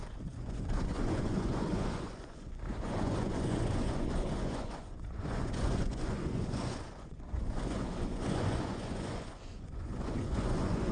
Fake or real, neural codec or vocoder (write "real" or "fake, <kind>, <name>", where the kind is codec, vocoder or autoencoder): fake, vocoder, Vocos